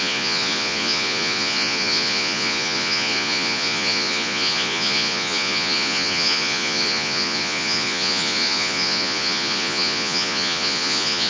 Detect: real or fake fake